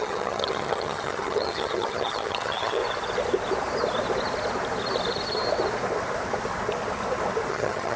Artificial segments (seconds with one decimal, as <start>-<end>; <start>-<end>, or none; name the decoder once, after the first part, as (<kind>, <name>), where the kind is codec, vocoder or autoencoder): 0.0-2.8 (vocoder, HiFi-GAN); 7.5-8.0